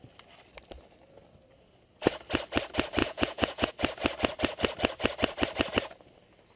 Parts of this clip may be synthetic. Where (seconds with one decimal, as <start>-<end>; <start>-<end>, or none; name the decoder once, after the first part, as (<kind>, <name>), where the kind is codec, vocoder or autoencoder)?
3.0-3.7 (vocoder, Vocos)